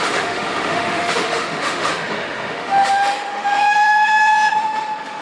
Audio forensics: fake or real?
fake